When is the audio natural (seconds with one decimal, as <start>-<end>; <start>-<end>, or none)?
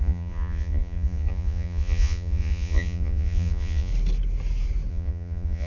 3.9-4.9